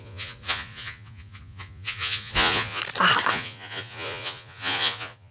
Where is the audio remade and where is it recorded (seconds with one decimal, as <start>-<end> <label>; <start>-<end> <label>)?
0.0-2.8 remade; 2.8-3.3 recorded; 3.3-5.3 remade